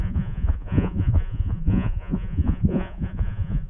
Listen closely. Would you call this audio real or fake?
fake